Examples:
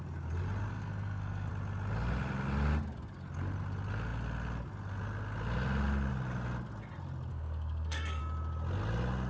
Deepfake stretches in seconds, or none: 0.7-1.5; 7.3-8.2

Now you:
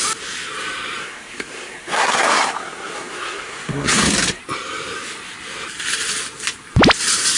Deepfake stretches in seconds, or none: 1.0-4.4

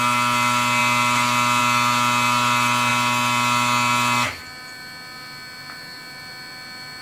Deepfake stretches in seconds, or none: none

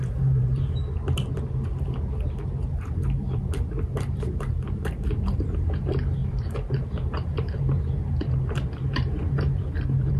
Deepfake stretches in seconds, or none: 0.0-0.8; 2.8-10.2

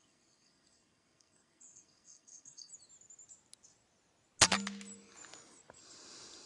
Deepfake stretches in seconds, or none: 0.0-2.7

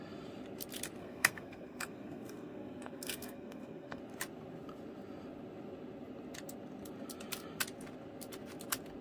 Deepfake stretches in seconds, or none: 1.0-4.0

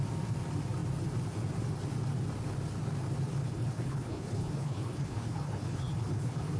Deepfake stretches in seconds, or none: 3.4-6.6